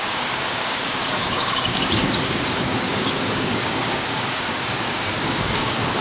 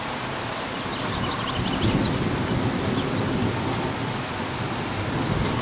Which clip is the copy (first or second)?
first